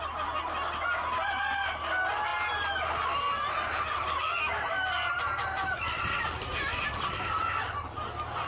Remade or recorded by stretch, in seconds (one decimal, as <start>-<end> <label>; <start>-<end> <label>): 0.0-8.5 recorded